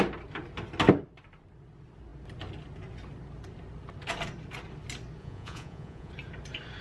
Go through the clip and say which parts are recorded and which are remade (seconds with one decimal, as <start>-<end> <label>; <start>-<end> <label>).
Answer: 0.0-5.2 recorded; 5.2-6.1 remade; 6.1-6.8 recorded